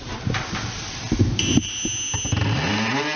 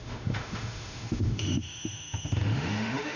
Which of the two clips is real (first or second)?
first